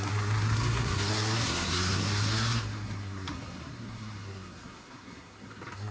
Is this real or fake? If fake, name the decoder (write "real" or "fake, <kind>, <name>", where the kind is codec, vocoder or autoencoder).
fake, codec, SNAC